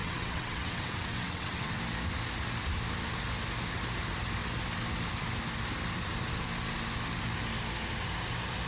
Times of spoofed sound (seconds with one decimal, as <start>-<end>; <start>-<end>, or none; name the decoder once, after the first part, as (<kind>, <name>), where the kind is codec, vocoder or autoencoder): 0.0-1.8 (vocoder, WaveNeXt)